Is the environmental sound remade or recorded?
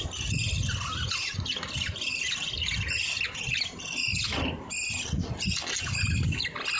recorded